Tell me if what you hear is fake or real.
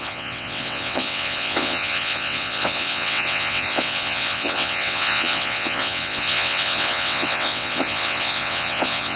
fake